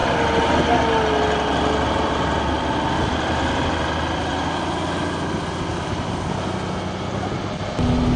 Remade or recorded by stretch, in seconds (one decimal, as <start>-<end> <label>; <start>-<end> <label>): 0.0-8.2 recorded